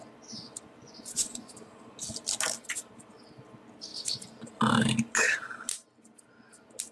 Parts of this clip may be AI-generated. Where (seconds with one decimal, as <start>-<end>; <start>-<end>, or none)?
0.8-1.5

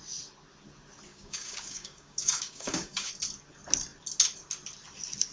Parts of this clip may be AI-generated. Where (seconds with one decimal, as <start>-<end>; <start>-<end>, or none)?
1.1-3.1